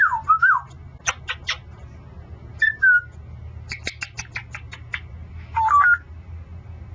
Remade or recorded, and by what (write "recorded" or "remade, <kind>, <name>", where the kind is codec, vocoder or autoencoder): recorded